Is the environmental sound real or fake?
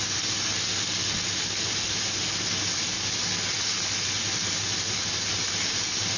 real